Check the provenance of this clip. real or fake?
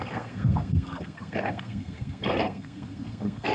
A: fake